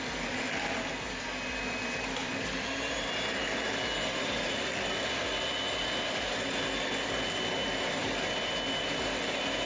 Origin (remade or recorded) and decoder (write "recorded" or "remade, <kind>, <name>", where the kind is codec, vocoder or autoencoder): recorded